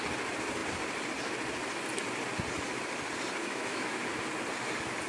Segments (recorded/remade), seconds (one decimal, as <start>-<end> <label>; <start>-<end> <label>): 0.0-3.4 recorded; 3.4-4.0 remade; 4.0-5.1 recorded